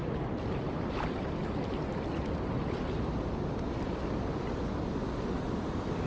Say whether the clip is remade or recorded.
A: recorded